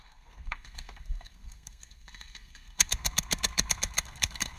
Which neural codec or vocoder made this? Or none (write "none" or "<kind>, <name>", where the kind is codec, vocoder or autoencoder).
codec, SNAC